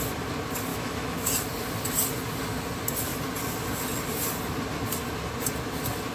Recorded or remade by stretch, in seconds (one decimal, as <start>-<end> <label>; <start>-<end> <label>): 0.0-0.7 recorded; 0.7-1.3 remade; 1.3-6.1 recorded